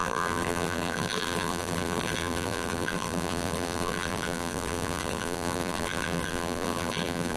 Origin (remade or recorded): remade